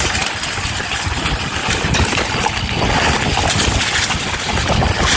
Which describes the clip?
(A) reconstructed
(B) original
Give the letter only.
B